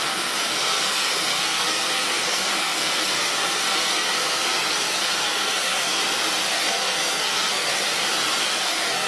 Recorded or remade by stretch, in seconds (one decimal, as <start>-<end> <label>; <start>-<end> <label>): 0.0-6.0 remade; 6.0-6.6 recorded; 6.6-7.7 remade; 7.7-8.4 recorded; 8.4-9.1 remade